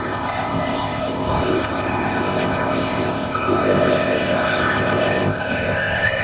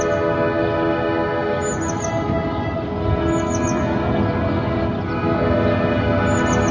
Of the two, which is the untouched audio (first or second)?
second